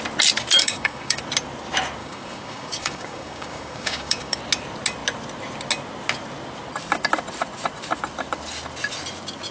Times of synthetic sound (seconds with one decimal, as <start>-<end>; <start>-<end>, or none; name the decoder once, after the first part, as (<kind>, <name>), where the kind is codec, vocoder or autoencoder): 0.6-1.2 (codec, DAC); 2.0-4.4